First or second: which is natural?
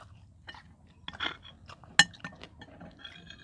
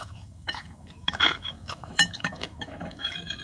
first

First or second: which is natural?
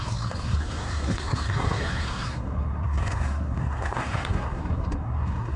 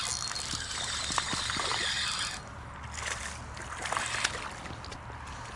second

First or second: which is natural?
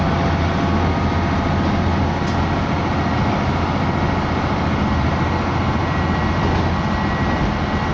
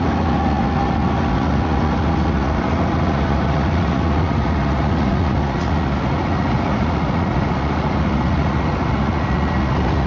first